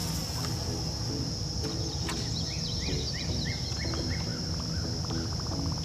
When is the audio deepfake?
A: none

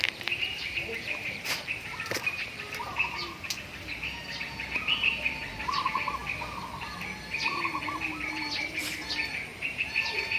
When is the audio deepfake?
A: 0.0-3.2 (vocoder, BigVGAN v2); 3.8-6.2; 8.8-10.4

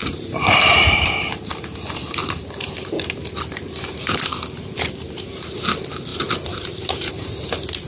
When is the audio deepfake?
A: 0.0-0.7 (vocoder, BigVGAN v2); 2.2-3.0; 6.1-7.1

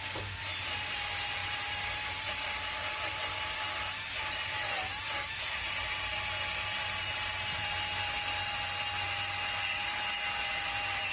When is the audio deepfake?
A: none

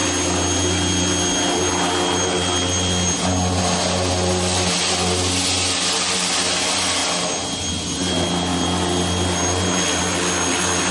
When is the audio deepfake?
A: none

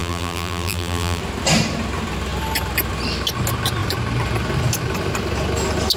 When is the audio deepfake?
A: 0.0-1.2 (vocoder, BigVGAN v2)

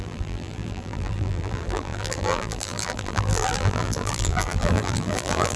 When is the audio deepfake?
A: 0.0-5.6 (vocoder, BigVGAN v2)